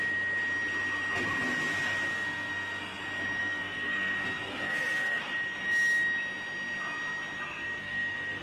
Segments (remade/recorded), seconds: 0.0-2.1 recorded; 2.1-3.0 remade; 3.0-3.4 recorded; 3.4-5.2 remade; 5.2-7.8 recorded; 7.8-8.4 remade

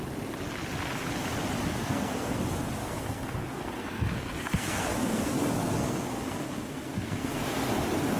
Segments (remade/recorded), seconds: 0.0-1.7 recorded; 1.7-2.4 remade; 2.4-2.8 recorded; 2.8-7.7 remade; 7.7-8.2 recorded

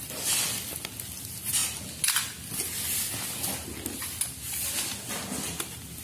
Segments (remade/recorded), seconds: 0.0-6.0 recorded

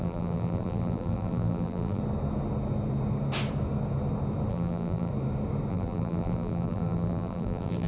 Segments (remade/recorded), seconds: 0.0-2.0 remade; 2.0-4.5 recorded; 4.5-5.1 remade; 5.1-5.7 recorded; 5.7-7.9 remade

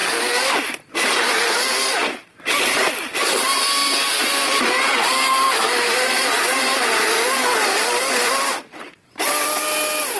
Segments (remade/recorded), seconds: 0.0-4.2 recorded; 4.2-6.9 remade; 6.9-10.2 recorded

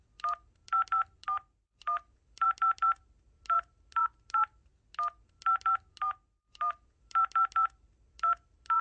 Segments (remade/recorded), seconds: 0.0-4.7 remade; 4.7-5.2 recorded; 5.2-8.8 remade